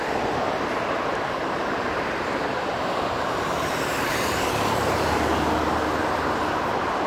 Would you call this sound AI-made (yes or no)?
no